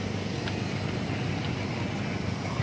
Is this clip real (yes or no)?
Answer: yes